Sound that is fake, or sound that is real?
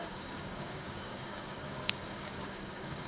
fake